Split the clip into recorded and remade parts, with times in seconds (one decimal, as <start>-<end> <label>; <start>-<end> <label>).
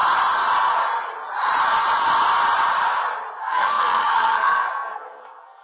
0.0-3.4 recorded; 3.4-5.6 remade